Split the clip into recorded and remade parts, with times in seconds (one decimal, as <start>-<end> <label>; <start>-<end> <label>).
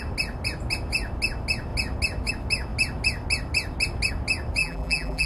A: 0.0-4.6 recorded; 4.6-5.3 remade